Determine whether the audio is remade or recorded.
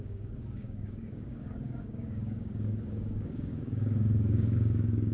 remade